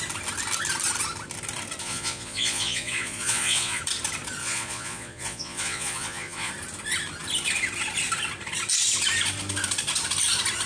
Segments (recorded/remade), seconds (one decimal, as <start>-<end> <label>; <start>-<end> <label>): 0.0-1.8 recorded; 1.8-3.8 remade; 3.8-4.4 recorded; 4.4-6.5 remade; 6.5-10.7 recorded